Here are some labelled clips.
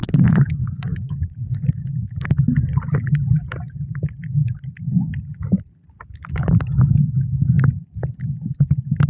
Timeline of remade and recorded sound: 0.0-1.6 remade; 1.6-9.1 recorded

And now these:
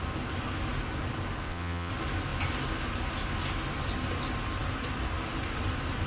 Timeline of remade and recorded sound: 0.0-1.4 recorded; 1.4-1.9 remade; 1.9-6.1 recorded

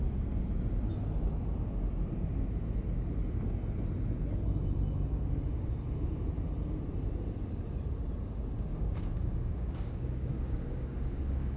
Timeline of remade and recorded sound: 0.0-8.7 recorded; 8.7-11.6 remade